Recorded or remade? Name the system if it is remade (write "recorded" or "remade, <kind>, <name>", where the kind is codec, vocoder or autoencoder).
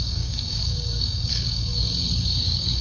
remade, codec, DAC